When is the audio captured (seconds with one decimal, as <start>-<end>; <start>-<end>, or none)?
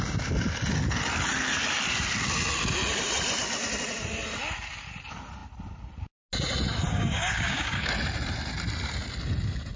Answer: 0.0-6.9; 7.9-9.8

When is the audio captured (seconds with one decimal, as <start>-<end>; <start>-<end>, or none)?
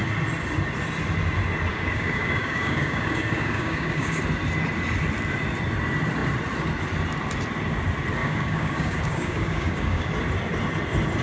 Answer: 0.0-1.7; 4.2-8.2; 10.1-11.2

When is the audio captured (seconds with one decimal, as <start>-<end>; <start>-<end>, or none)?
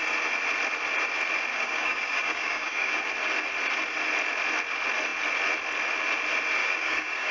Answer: 0.0-1.5; 3.0-6.6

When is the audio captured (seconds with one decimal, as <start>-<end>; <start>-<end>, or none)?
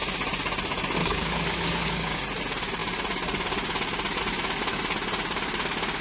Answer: 0.0-1.0; 2.2-6.0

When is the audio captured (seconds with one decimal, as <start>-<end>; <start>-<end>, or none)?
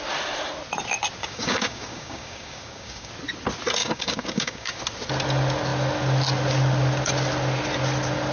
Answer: 0.0-1.2; 3.1-3.8; 4.8-8.3